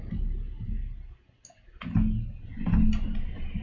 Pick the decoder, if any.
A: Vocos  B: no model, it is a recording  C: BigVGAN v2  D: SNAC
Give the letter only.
B